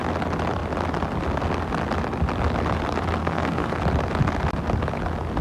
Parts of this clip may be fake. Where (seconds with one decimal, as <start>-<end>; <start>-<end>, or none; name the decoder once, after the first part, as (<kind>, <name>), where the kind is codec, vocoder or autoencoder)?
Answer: 3.2-3.8 (codec, SNAC)